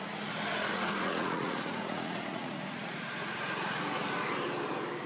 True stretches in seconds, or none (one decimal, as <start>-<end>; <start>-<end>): 0.0-0.7; 3.8-5.1